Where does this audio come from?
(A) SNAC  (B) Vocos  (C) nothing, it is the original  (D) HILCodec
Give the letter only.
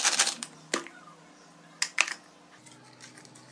C